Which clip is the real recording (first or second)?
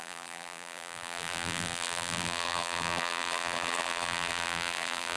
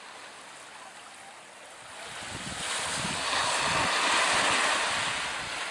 second